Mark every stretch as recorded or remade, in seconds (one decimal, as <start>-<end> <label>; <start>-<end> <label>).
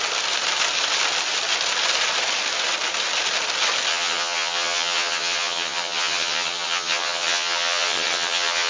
0.0-3.9 recorded; 3.9-8.7 remade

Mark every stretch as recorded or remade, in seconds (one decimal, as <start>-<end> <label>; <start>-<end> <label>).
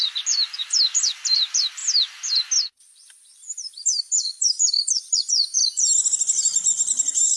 0.0-1.8 remade; 1.8-3.4 recorded; 3.4-5.6 remade; 5.6-6.4 recorded; 6.4-7.4 remade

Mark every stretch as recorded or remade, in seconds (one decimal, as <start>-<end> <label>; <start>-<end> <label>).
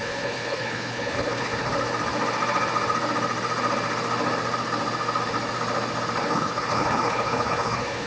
0.0-1.7 remade; 1.7-6.2 recorded; 6.2-8.1 remade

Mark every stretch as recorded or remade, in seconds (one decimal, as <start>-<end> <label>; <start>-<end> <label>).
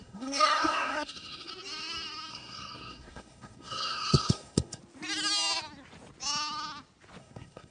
0.0-1.5 remade; 1.5-2.3 recorded; 2.3-4.8 remade; 4.8-7.2 recorded; 7.2-7.7 remade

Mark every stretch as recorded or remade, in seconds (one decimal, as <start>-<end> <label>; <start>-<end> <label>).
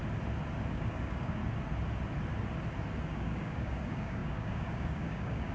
0.0-0.7 recorded; 0.7-1.4 remade; 1.4-3.1 recorded; 3.1-5.5 remade